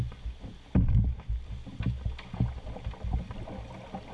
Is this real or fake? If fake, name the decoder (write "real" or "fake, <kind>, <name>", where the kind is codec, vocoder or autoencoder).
real